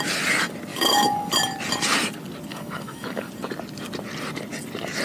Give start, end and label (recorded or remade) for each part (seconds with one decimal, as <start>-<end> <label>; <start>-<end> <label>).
0.0-0.7 recorded; 0.7-1.3 remade; 1.3-2.5 recorded; 2.5-3.3 remade; 3.3-5.0 recorded